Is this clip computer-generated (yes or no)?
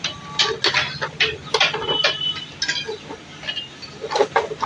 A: no